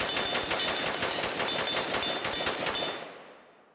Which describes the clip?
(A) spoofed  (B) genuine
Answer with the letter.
B